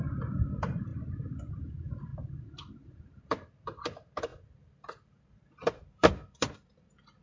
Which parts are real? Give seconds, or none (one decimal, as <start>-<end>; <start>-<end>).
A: 0.9-1.5